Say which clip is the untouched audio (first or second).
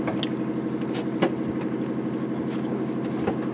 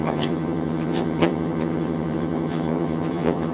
first